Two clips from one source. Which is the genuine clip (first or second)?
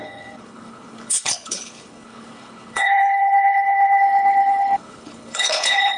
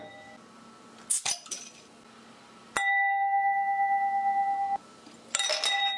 second